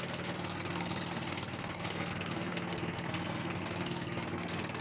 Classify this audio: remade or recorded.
remade